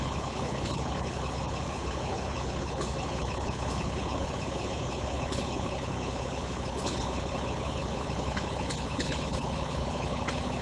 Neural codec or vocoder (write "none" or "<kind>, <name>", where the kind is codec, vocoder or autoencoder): codec, HILCodec